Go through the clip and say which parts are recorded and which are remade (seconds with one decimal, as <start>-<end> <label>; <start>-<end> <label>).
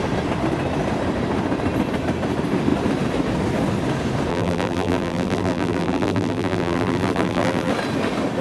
0.0-4.3 recorded; 4.3-7.7 remade; 7.7-8.4 recorded